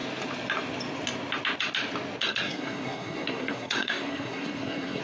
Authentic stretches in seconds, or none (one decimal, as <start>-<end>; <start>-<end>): 0.0-2.2

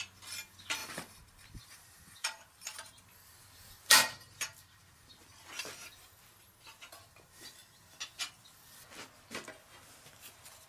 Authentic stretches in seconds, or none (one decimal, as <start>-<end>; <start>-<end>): 0.0-0.8; 5.6-10.7

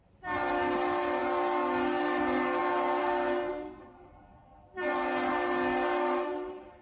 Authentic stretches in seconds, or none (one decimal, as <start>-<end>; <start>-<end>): 0.0-3.0; 3.8-6.8

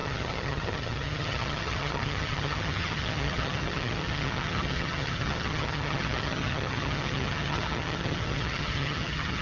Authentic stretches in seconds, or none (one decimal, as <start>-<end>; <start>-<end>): none

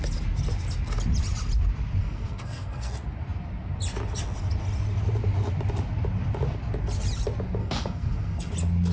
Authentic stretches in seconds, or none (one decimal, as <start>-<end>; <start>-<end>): 0.0-2.0; 2.9-7.6; 8.5-8.9

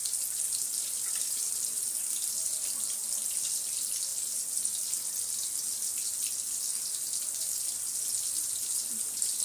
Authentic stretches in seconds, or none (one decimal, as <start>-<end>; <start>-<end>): 0.0-9.4

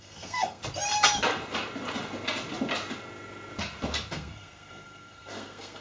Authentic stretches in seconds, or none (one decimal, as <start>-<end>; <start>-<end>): 0.6-4.1

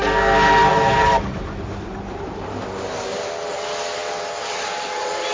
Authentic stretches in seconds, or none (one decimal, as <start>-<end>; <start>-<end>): 0.0-0.7; 2.6-5.3